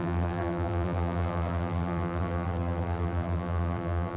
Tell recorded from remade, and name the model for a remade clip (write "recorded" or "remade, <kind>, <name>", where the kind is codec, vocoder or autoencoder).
remade, vocoder, BigVGAN v2